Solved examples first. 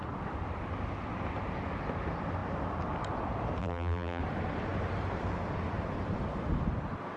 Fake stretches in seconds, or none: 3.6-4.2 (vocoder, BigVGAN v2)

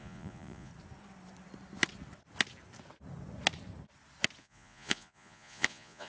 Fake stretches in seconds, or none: 0.0-0.7 (vocoder, Vocos); 4.4-6.1

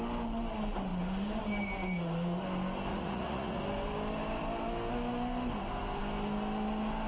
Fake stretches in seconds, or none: 2.9-3.6 (vocoder, Vocos)

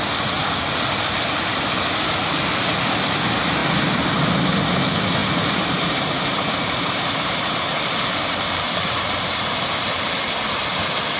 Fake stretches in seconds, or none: 5.2-10.1 (vocoder, BigVGAN v2)